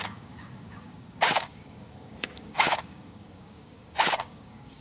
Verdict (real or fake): fake